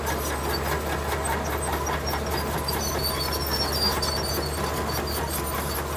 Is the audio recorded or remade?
recorded